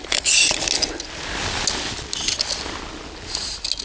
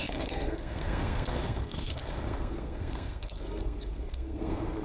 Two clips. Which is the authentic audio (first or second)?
first